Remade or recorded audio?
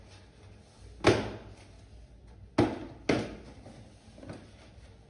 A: recorded